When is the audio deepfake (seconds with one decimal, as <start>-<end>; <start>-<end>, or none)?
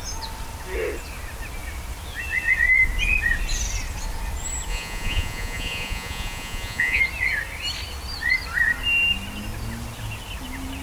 4.7-7.0